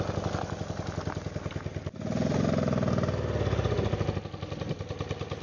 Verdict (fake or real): real